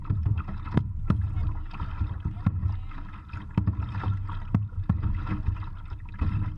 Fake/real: real